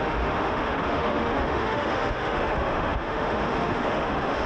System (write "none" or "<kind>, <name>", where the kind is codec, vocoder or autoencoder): autoencoder, DAC-VAE